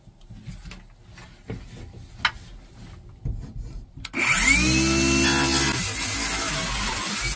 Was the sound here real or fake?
real